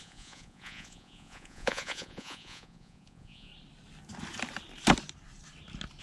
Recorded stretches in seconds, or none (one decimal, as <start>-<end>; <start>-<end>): 3.5-6.0